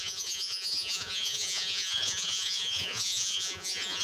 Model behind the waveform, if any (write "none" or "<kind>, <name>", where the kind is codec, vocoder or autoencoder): vocoder, Vocos